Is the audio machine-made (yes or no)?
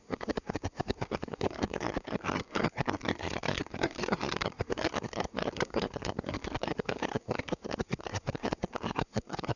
yes